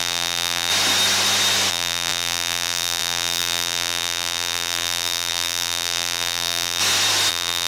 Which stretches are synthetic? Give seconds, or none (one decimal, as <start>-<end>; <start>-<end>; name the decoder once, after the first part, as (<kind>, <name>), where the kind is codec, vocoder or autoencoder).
0.0-0.7 (vocoder, BigVGAN v2); 1.7-6.8; 7.3-7.7